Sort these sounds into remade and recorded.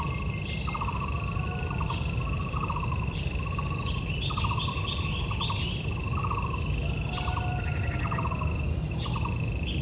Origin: recorded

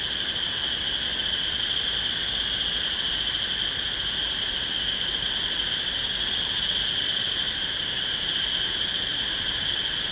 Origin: recorded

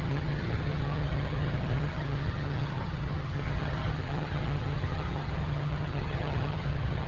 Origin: remade